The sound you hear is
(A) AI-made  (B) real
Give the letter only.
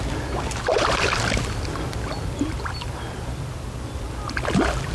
B